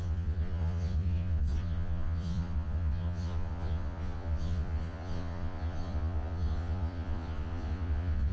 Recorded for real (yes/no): no